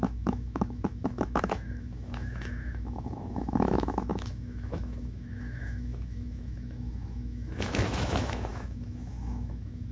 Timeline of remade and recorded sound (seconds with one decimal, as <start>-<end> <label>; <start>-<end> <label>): 0.0-9.9 remade